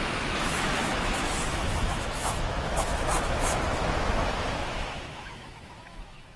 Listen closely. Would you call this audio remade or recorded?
remade